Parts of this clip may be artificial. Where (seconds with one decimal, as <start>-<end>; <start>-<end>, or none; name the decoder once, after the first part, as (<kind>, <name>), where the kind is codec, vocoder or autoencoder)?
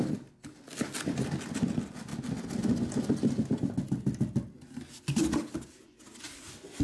none